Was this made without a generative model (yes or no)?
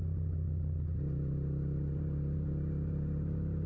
yes